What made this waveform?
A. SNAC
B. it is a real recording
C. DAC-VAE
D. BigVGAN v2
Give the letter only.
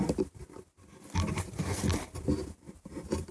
B